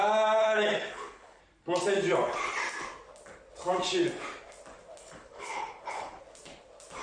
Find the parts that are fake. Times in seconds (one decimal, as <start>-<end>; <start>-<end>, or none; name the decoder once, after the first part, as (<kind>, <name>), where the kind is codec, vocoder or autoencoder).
0.4-1.4 (codec, HILCodec); 5.0-6.2